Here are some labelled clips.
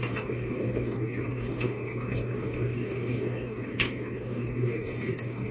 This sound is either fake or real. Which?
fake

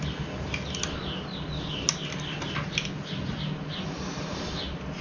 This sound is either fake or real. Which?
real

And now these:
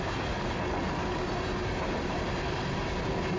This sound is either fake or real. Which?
real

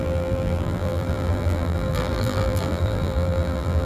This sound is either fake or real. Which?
fake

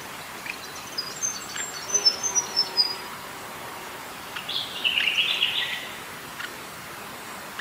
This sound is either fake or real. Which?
fake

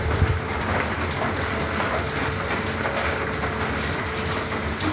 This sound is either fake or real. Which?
real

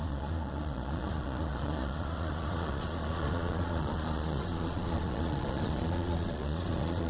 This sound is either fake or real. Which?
fake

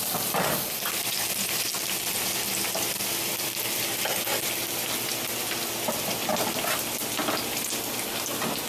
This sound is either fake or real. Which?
real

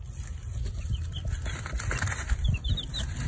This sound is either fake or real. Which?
real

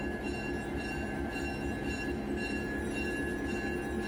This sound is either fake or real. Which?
real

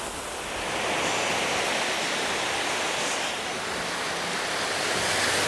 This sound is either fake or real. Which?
real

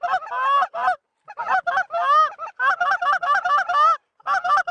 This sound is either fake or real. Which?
real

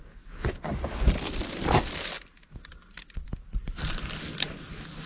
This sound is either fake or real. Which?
real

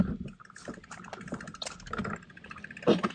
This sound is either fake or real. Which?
real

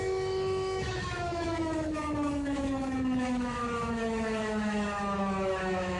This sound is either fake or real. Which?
fake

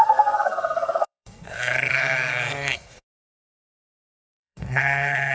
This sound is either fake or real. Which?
fake